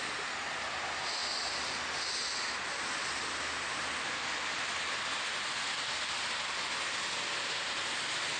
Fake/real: real